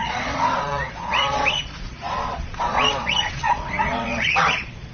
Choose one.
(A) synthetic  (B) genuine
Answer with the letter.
A